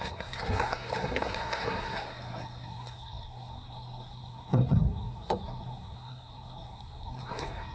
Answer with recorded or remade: remade